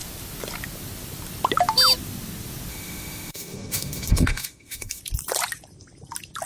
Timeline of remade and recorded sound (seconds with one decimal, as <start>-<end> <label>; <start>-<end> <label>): 0.0-2.7 recorded; 2.7-5.0 remade; 5.0-6.5 recorded